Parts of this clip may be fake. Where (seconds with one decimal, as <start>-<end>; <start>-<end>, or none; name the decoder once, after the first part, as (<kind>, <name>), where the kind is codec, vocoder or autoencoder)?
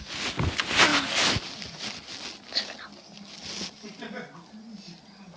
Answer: none